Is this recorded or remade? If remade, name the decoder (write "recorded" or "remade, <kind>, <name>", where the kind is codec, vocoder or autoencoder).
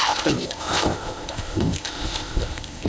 remade, codec, ZipCodec